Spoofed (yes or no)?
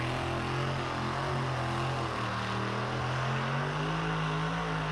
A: no